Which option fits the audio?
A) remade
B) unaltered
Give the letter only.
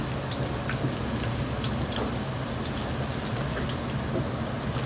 B